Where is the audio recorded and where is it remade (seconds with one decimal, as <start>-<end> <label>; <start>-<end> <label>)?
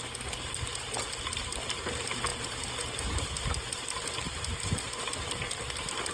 0.0-6.1 recorded